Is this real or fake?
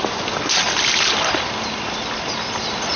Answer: real